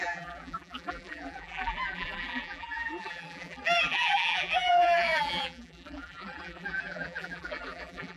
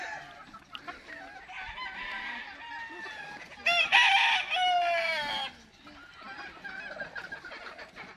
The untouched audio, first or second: second